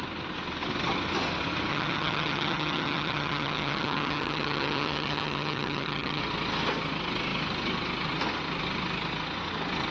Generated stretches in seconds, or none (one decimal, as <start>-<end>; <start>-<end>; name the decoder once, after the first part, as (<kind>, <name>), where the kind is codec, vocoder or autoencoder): 1.7-6.2 (vocoder, HiFi-GAN)